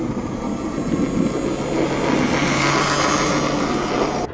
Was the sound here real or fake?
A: real